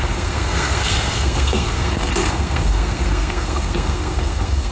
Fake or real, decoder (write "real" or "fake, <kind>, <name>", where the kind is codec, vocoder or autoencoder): fake, codec, SNAC